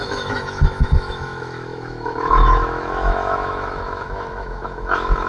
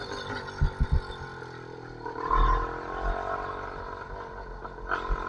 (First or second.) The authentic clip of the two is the second